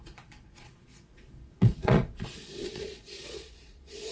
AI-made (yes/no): yes